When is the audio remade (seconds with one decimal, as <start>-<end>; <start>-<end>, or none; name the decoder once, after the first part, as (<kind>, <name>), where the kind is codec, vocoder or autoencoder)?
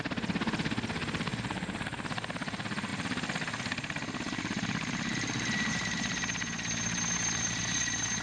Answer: none